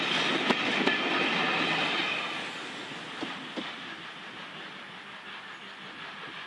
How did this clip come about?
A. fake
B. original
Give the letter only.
B